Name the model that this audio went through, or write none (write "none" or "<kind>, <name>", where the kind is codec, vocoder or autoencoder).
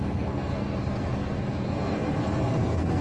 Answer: codec, SNAC